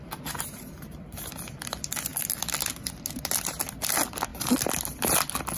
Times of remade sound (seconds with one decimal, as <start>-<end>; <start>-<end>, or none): none

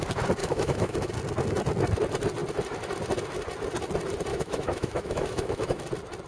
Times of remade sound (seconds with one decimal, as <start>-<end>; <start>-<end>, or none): 0.4-1.1; 4.3-5.8

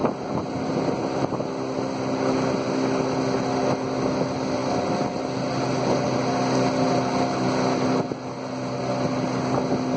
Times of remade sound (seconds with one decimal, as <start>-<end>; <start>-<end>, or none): none

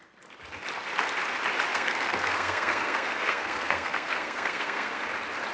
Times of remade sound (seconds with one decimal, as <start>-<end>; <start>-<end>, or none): 1.7-5.0

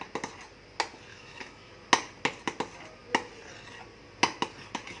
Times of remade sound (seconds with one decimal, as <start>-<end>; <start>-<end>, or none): 1.1-1.7

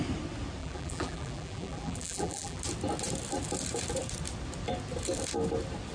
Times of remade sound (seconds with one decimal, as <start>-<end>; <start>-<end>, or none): 0.6-2.6